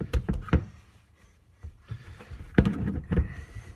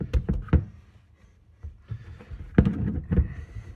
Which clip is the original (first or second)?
second